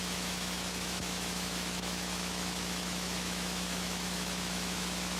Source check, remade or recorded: remade